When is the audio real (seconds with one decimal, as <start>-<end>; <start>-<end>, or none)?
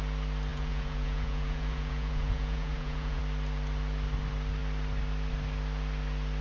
0.0-0.5; 3.2-6.4